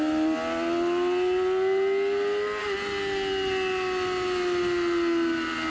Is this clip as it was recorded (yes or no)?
yes